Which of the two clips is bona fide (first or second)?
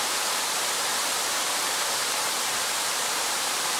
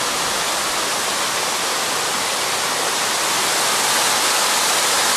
second